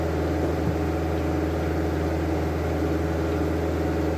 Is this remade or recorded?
recorded